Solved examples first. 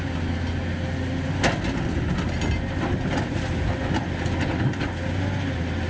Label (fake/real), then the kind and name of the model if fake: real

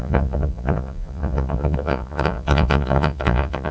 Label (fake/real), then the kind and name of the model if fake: fake, vocoder, Vocos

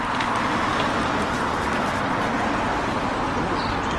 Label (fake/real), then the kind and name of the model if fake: real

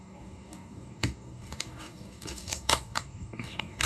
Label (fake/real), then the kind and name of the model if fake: fake, codec, DAC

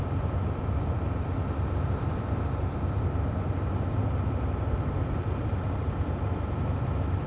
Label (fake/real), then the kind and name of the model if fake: fake, vocoder, BigVGAN v2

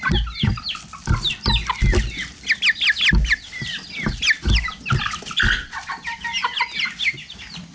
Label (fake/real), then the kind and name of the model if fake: real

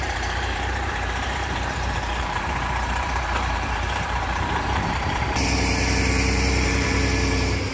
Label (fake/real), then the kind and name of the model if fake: fake, vocoder, BigVGAN v2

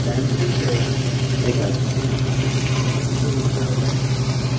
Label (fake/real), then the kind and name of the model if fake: real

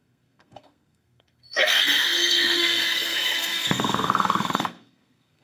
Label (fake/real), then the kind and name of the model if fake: fake, codec, SNAC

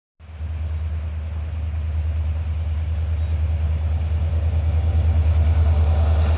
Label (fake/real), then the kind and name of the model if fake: real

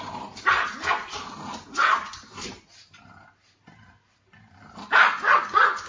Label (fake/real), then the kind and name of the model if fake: real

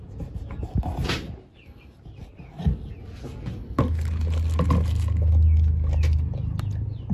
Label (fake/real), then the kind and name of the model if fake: real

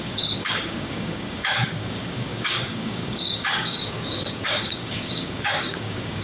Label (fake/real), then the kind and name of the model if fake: fake, codec, DAC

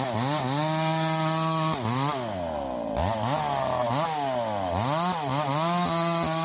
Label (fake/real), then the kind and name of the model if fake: real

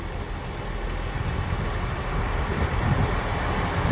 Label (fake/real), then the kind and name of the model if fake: real